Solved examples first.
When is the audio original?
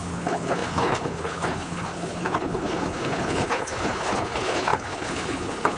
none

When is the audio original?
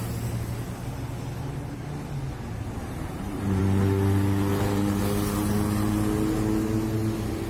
0.0-2.8; 3.6-4.5; 5.0-7.5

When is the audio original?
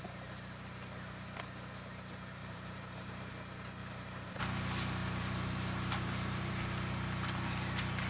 0.0-2.4; 3.3-3.8; 4.4-5.0; 6.5-8.1